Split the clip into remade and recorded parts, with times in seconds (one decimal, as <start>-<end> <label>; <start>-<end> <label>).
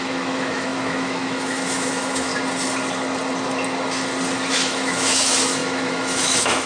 0.0-2.3 remade; 2.3-4.5 recorded; 4.5-6.7 remade